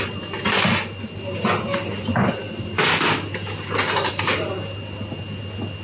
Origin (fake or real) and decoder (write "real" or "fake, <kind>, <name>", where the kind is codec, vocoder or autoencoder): real